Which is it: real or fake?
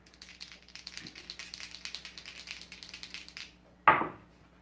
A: real